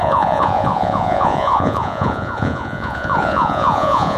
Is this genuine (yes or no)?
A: no